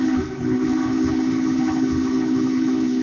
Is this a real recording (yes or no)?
no